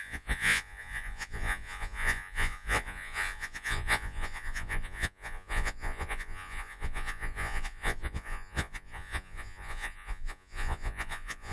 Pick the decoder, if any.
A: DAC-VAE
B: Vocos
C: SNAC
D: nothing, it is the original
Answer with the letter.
B